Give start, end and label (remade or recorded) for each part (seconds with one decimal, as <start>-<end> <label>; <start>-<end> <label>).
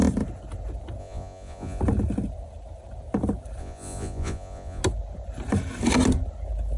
0.0-1.0 recorded; 1.0-1.8 remade; 1.8-3.6 recorded; 3.6-4.8 remade; 4.8-6.8 recorded